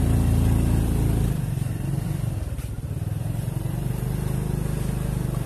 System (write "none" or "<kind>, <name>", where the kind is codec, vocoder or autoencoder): none